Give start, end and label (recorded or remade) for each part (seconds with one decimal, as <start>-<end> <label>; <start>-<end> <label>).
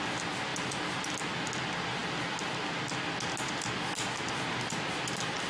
0.0-5.5 recorded